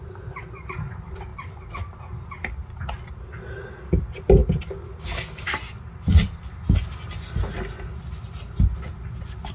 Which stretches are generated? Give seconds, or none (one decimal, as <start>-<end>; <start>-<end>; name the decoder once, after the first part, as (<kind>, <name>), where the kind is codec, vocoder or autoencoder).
none